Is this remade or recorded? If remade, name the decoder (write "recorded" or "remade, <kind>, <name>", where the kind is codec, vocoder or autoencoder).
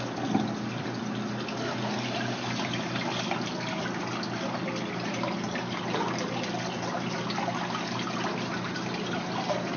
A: recorded